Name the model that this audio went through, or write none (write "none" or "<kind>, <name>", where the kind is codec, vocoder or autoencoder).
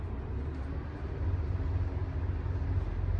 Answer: none